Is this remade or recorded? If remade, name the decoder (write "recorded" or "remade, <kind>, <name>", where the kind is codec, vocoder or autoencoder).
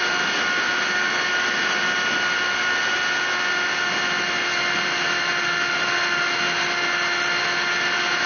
recorded